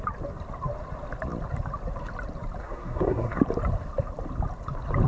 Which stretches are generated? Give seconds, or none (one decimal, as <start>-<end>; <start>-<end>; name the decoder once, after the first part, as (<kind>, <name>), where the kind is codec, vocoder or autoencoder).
2.6-3.4 (codec, SNAC)